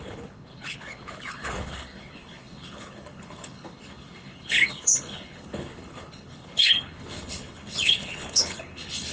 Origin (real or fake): fake